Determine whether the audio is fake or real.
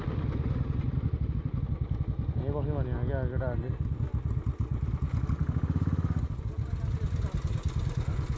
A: real